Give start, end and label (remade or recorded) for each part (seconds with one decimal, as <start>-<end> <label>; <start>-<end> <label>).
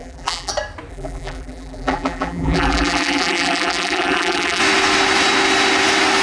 0.0-0.5 remade; 0.5-0.9 recorded; 0.9-4.6 remade; 4.6-6.2 recorded